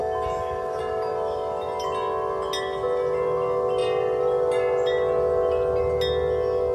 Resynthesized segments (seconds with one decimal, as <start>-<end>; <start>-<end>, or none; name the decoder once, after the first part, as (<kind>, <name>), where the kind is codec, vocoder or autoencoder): 0.0-0.8 (autoencoder, DAC-VAE)